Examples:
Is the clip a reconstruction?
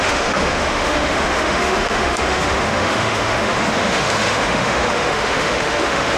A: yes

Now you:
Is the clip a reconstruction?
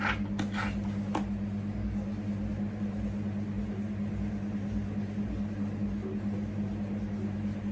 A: no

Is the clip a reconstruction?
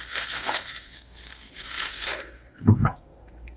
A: yes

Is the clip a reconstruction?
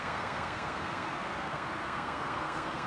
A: yes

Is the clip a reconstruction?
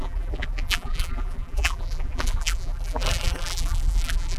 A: yes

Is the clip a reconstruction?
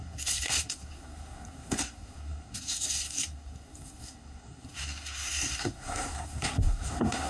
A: yes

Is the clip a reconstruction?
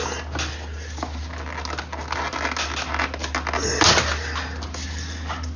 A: no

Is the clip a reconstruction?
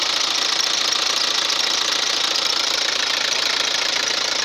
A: no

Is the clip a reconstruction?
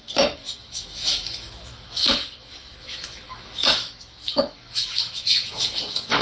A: yes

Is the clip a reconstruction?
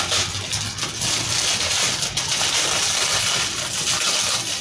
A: no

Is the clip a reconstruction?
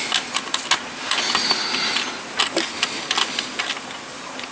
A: no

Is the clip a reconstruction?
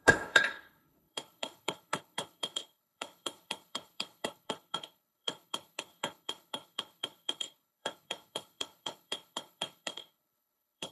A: yes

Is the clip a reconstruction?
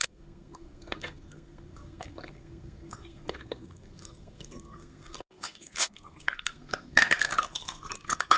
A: yes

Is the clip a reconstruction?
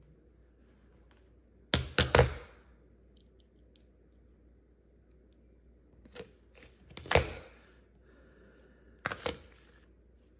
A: no